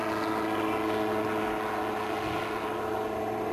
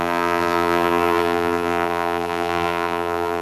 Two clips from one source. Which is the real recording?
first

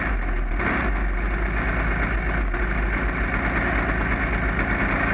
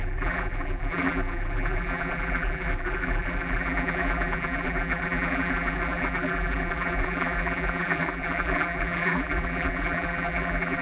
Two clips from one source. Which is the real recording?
first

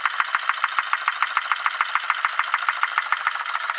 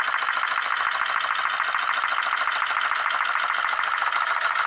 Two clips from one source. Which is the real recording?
second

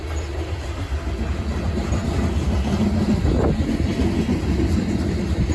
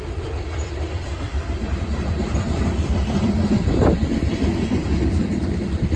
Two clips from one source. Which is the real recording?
first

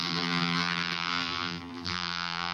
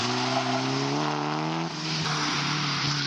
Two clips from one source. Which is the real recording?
second